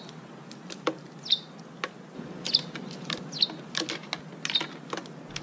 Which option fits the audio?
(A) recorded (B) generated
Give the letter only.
A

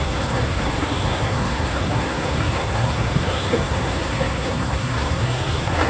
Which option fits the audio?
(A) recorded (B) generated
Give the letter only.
B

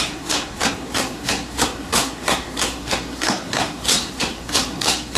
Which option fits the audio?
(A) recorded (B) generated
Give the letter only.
B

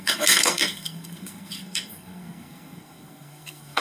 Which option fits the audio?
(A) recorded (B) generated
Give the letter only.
B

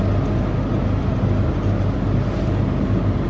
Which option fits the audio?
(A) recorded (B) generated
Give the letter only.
A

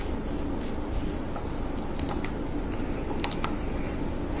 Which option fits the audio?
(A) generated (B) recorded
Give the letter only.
B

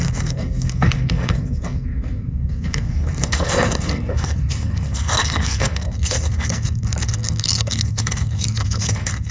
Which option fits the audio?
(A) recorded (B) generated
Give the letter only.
B